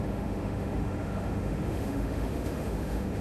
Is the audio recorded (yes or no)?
no